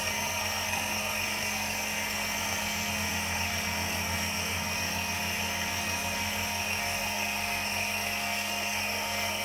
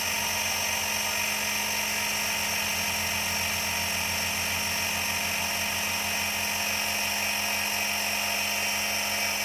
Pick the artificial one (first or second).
first